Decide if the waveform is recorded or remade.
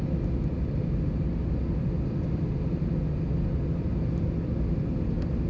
recorded